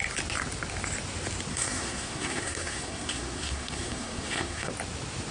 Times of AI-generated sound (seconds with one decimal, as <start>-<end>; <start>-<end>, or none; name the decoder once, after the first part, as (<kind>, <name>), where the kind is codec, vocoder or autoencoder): 1.5-4.7 (codec, SNAC)